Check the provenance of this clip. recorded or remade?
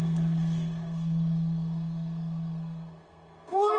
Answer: remade